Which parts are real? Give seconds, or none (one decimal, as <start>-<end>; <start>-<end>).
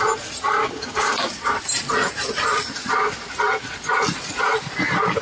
0.0-0.6; 1.5-5.2